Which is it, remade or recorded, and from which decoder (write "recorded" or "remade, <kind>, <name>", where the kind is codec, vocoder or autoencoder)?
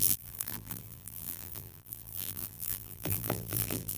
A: remade, vocoder, BigVGAN v2